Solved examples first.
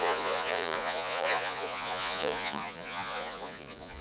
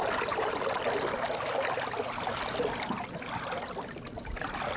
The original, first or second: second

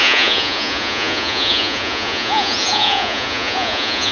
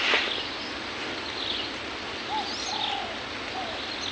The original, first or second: second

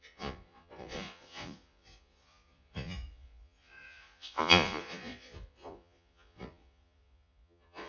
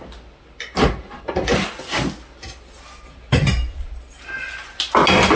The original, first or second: second